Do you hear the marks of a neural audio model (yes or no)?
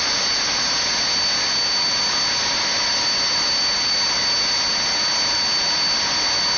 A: no